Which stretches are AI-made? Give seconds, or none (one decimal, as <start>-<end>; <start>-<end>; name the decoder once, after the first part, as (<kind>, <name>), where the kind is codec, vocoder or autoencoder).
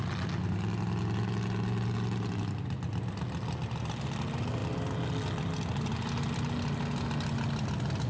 none